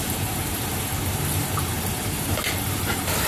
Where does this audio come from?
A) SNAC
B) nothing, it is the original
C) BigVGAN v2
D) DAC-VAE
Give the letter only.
C